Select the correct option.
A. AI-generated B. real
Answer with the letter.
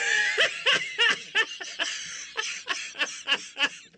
B